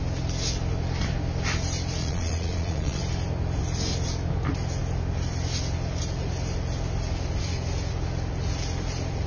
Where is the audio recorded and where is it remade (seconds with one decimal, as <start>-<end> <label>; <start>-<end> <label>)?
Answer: 0.0-2.0 recorded; 2.0-3.0 remade; 3.0-9.3 recorded